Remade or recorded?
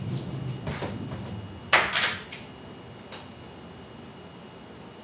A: recorded